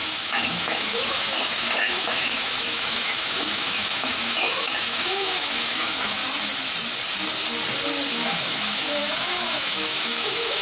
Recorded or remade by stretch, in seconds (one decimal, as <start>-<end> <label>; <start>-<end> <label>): 0.0-6.2 remade; 6.2-8.1 recorded; 8.1-10.6 remade